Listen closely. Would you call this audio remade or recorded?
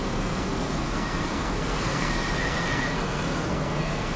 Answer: remade